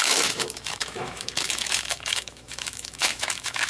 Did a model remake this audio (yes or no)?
yes